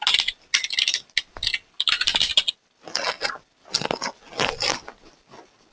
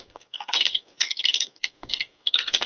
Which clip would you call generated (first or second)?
second